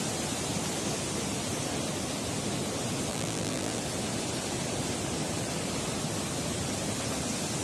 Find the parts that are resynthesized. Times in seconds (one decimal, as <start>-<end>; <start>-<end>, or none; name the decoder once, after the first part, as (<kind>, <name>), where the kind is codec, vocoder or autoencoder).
3.1-3.8 (vocoder, BigVGAN v2)